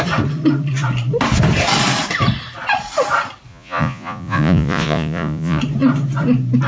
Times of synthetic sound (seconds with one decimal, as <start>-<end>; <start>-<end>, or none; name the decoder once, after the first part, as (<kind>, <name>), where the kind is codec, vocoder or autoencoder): 3.5-5.6 (vocoder, Vocos)